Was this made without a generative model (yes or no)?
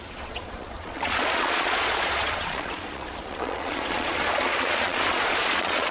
no